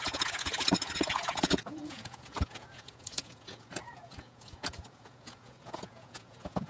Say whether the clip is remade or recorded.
remade